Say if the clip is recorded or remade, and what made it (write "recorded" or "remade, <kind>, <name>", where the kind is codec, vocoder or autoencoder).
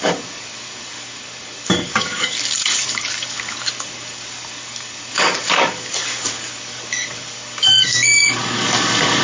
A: remade, codec, DAC